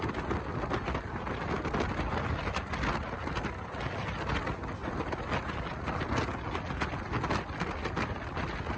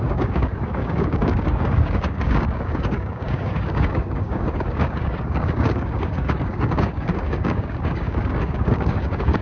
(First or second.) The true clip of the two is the first